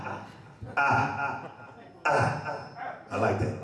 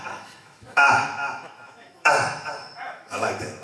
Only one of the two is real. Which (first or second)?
first